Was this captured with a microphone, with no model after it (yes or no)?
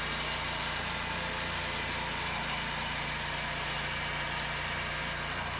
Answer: yes